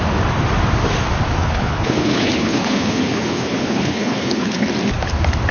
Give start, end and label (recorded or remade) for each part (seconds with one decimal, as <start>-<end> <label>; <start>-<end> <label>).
0.0-1.4 recorded; 1.4-4.7 remade; 4.7-5.5 recorded